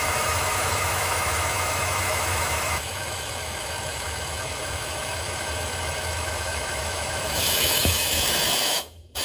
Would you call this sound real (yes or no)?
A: no